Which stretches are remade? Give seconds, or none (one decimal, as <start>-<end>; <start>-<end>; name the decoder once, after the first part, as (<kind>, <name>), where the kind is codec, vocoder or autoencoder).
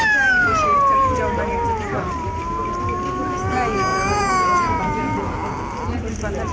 3.9-4.8 (vocoder, BigVGAN v2)